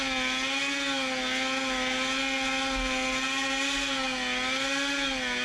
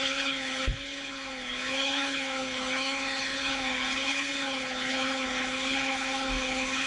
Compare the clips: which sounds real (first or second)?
first